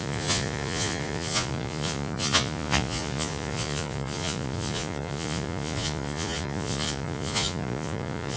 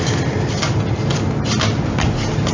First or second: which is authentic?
second